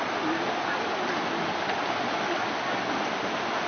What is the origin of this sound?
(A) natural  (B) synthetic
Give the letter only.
A